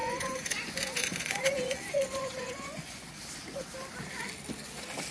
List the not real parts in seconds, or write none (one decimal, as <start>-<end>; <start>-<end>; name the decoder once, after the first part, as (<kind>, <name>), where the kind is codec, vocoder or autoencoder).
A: 0.0-3.1 (vocoder, Vocos)